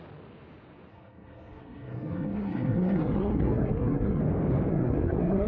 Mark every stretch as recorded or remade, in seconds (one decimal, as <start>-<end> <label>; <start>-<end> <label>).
0.0-0.9 recorded; 0.9-4.2 remade; 4.2-4.7 recorded; 4.7-5.5 remade